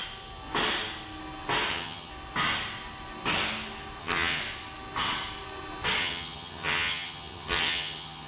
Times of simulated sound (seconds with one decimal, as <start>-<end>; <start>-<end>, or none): 1.7-2.1; 4.0-4.4; 6.0-8.3